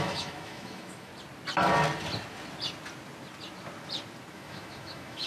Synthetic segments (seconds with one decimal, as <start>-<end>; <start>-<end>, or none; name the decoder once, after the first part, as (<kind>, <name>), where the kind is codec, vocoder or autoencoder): 0.0-1.1 (autoencoder, DAC-VAE); 4.3-5.3